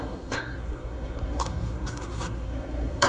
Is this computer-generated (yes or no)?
yes